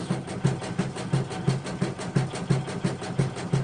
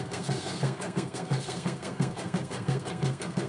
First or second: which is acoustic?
first